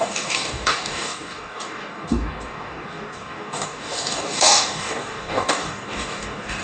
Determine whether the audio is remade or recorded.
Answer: remade